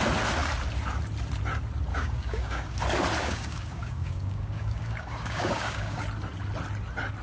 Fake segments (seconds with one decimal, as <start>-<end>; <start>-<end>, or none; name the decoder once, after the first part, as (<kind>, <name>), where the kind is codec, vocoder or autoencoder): 1.9-2.8 (codec, DAC); 3.2-6.0